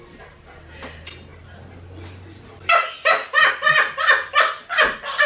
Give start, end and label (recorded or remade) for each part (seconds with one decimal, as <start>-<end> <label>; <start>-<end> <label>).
0.0-5.3 recorded